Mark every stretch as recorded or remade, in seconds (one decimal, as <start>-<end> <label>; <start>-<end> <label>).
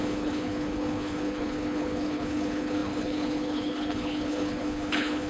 0.0-5.3 remade